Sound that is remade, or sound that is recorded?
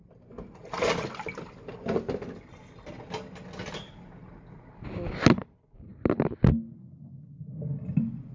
recorded